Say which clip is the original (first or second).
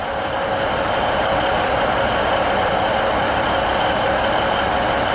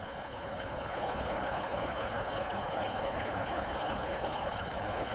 first